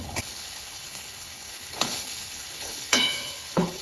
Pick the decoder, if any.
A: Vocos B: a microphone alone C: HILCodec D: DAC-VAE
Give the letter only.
C